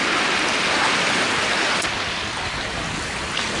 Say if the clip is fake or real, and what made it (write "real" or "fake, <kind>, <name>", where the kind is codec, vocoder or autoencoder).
real